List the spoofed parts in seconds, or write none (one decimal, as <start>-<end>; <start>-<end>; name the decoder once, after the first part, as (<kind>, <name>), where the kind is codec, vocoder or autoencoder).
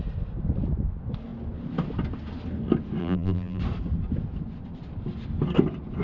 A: 3.0-3.6 (vocoder, BigVGAN v2)